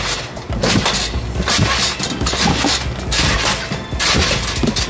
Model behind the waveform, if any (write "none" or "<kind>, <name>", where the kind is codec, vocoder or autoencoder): none